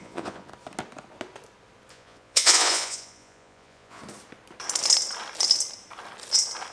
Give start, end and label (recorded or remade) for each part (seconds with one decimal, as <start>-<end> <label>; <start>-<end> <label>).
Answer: 0.0-0.5 remade; 0.5-1.9 recorded; 1.9-4.0 remade; 4.0-6.7 recorded